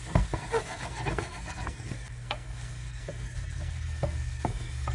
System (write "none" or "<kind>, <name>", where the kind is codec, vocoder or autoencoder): codec, SNAC